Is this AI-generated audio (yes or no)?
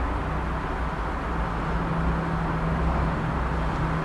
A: no